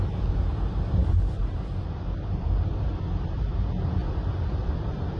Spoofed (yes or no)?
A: yes